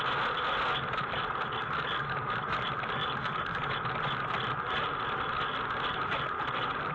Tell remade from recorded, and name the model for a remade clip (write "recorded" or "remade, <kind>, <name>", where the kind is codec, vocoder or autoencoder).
recorded